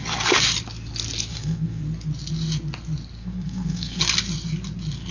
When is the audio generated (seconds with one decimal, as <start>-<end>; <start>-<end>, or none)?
1.3-1.8; 3.2-4.0

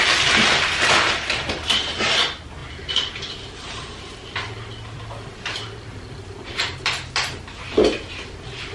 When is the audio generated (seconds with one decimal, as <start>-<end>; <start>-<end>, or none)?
none

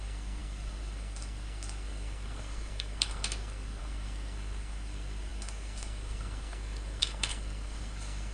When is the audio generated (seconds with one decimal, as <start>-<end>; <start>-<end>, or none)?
0.0-8.3

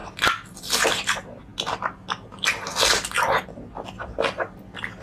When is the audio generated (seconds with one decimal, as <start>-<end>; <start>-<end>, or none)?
none